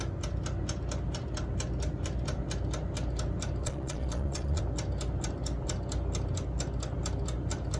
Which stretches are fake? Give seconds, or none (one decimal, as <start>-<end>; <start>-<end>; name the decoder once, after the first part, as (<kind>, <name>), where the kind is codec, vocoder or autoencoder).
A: 3.6-4.6 (vocoder, Vocos)